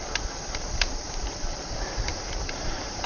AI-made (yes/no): yes